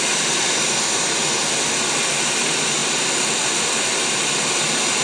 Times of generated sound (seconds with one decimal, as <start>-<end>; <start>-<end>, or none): none